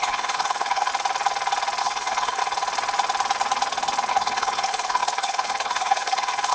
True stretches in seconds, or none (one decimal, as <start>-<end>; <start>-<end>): 0.9-1.8; 2.4-4.1